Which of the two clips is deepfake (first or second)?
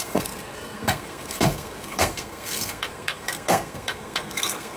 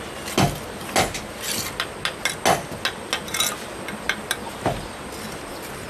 first